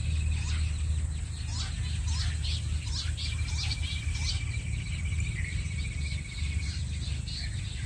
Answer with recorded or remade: recorded